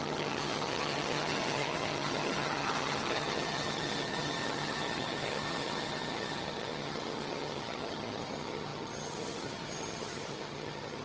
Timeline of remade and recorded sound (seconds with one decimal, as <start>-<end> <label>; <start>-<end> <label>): 0.0-11.0 remade